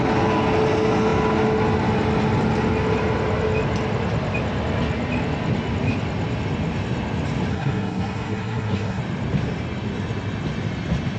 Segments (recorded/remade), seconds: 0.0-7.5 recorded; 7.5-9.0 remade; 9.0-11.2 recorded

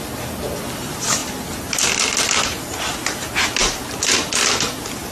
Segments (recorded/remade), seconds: 0.0-5.1 recorded

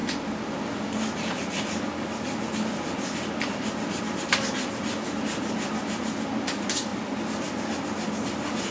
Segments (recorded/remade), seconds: 0.0-8.7 recorded

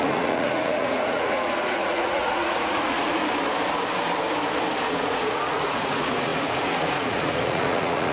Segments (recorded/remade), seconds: 0.0-3.2 remade; 3.2-4.9 recorded; 4.9-8.1 remade

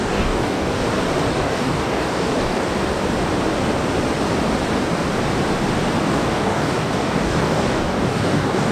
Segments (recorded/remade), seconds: 0.0-0.8 remade; 0.8-1.3 recorded; 1.3-2.7 remade; 2.7-6.0 recorded; 6.0-8.7 remade

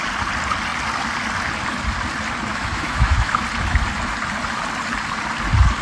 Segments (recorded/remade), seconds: 0.0-2.5 recorded; 2.5-3.4 remade; 3.4-5.8 recorded

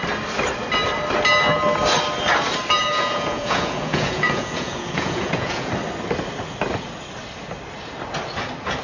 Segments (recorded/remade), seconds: 0.0-2.8 recorded; 2.8-5.7 remade; 5.7-8.8 recorded